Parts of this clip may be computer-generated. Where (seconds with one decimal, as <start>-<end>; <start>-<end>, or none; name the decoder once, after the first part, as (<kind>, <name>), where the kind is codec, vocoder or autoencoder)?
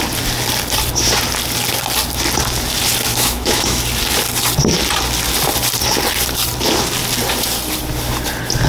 3.1-3.8 (autoencoder, DAC-VAE)